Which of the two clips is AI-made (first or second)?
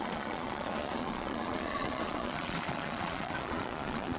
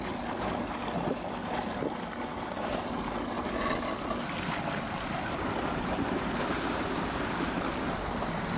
first